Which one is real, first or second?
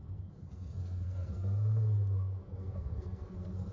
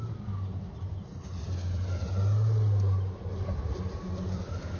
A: second